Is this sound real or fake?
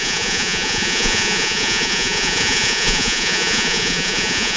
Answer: fake